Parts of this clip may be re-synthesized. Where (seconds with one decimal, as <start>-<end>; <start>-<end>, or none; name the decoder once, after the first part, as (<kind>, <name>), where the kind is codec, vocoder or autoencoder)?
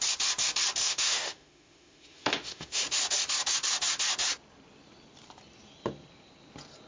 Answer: 0.8-2.8 (autoencoder, DAC-VAE)